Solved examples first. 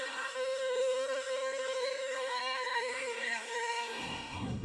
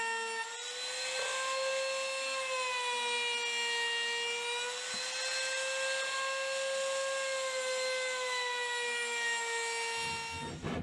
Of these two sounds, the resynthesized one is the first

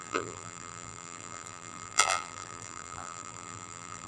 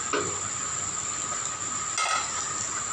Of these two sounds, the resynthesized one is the first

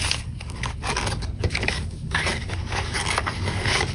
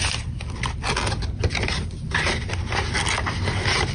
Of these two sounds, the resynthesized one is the first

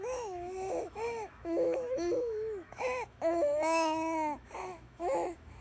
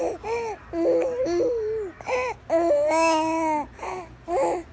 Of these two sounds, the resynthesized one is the first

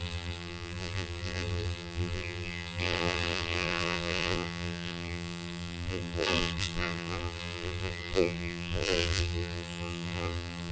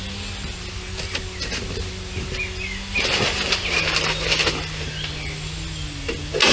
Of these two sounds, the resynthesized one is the first